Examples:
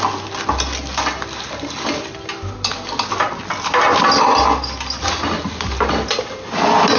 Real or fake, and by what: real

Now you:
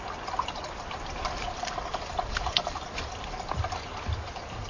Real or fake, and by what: real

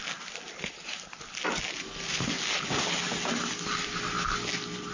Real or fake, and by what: real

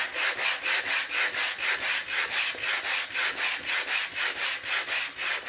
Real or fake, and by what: real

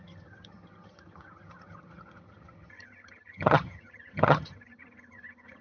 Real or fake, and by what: fake, vocoder, HiFi-GAN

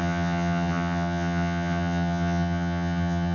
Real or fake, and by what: fake, vocoder, HiFi-GAN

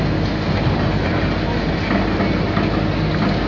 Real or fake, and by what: real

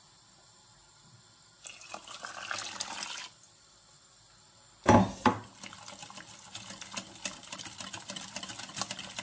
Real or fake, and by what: real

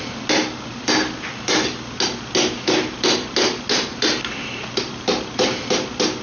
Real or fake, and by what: real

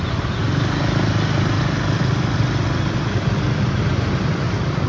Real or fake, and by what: real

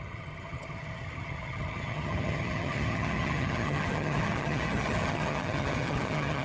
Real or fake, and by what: fake, vocoder, HiFi-GAN